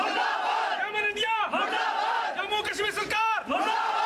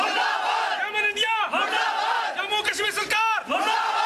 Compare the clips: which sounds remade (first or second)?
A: first